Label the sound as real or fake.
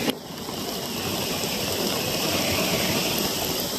real